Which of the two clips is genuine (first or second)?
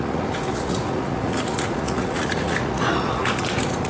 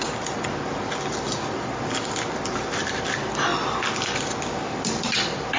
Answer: second